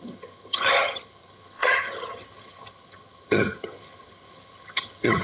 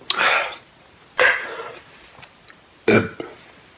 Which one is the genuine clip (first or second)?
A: second